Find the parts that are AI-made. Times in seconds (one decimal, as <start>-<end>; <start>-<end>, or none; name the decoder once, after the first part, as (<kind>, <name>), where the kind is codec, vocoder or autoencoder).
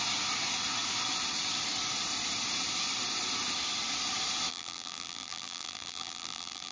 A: 4.5-6.7 (vocoder, BigVGAN v2)